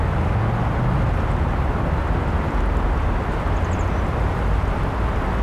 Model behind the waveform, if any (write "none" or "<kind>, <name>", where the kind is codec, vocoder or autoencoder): none